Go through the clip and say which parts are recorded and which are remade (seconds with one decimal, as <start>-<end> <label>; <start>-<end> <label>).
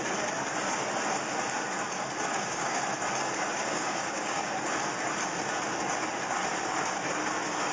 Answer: 0.0-2.3 recorded; 2.3-2.8 remade; 2.8-3.5 recorded; 3.5-4.5 remade; 4.5-7.7 recorded